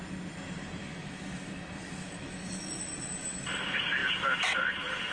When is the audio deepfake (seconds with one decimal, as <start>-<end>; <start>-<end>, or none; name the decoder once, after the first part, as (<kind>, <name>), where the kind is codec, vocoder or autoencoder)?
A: 0.8-2.8 (autoencoder, DAC-VAE)